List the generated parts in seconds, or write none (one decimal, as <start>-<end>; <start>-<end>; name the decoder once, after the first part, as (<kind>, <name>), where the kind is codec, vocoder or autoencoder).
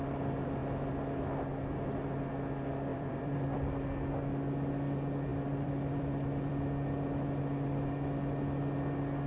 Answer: 2.9-4.1 (vocoder, BigVGAN v2); 5.3-6.5